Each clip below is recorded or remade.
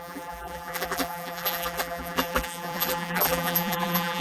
remade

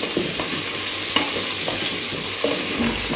recorded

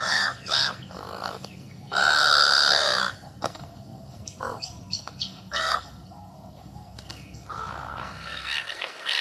remade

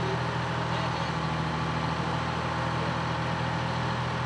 recorded